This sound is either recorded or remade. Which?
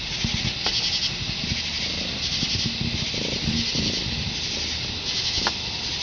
recorded